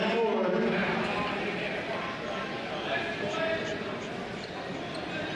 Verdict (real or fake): fake